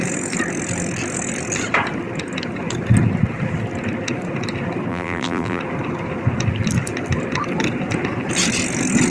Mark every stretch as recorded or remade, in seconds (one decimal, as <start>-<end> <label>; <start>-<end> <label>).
0.0-4.9 recorded; 4.9-5.6 remade; 5.6-9.1 recorded